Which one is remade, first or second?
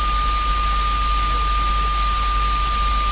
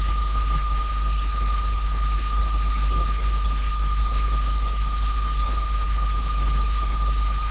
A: second